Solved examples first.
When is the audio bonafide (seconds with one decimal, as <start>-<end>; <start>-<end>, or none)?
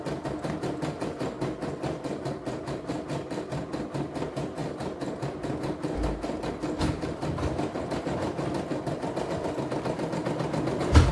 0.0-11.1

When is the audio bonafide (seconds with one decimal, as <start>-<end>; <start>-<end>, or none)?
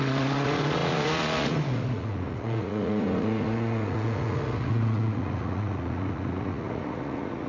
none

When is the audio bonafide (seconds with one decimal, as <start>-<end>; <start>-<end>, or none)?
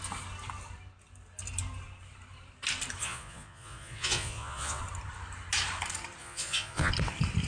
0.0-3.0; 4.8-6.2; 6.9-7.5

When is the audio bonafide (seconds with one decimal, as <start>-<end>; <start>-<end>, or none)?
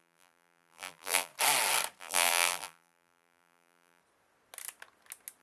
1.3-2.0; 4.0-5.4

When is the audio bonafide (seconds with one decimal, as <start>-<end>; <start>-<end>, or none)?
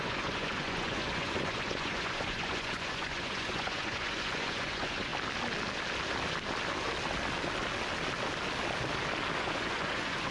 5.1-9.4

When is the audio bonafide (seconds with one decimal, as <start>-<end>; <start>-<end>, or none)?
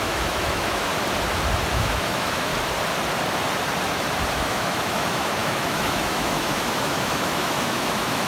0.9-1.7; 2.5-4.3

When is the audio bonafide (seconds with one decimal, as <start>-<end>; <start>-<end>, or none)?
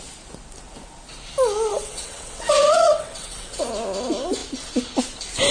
0.0-1.7; 3.7-5.5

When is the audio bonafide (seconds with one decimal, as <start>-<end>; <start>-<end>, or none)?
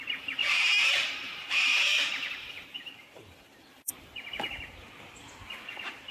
0.0-0.4; 2.8-3.7; 4.5-6.1